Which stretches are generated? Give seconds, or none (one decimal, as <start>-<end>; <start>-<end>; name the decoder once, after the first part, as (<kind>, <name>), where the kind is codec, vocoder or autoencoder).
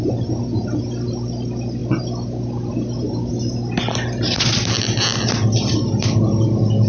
none